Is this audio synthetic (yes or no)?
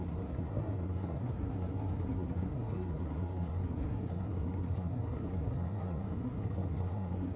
yes